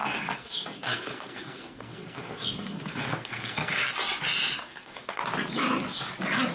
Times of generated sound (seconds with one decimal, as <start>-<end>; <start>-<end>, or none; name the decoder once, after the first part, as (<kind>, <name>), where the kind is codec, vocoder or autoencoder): 0.0-3.9 (codec, SNAC); 4.6-5.2